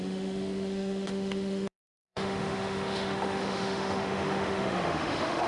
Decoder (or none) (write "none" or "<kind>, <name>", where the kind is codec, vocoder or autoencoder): autoencoder, DAC-VAE